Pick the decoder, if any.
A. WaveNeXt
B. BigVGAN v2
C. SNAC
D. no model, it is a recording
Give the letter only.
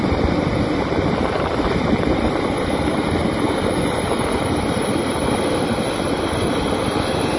B